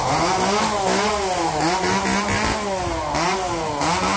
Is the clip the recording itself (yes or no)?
yes